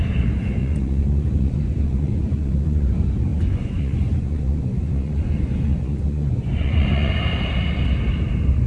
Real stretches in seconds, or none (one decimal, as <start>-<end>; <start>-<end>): 0.0-0.6; 2.9-3.3; 7.1-8.7